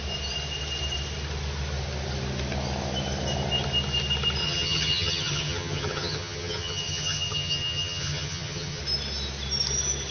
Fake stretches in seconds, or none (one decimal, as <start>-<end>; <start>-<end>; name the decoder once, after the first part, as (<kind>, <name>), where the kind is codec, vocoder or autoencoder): 4.4-8.8 (vocoder, HiFi-GAN)